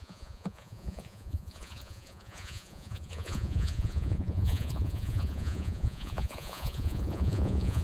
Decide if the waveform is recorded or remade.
remade